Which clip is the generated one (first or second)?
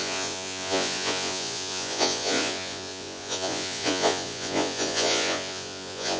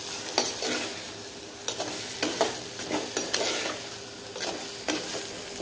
first